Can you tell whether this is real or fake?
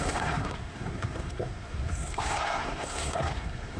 fake